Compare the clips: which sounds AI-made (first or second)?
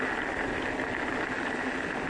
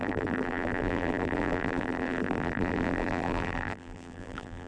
second